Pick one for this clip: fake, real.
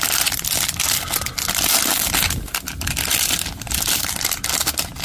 real